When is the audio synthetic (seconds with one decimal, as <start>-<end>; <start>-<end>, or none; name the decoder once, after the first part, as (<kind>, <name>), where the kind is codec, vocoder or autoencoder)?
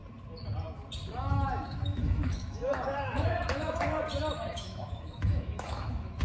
1.1-4.0 (autoencoder, DAC-VAE); 4.5-6.2